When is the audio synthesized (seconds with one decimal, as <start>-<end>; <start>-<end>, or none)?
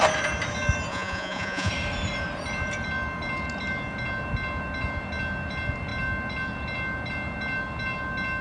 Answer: 0.9-1.7